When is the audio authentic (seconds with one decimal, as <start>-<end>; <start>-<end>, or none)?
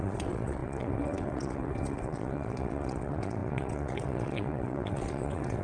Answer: none